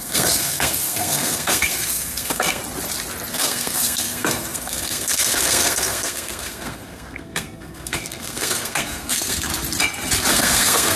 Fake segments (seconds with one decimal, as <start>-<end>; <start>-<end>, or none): 0.0-2.6; 3.3-9.5; 10.3-11.0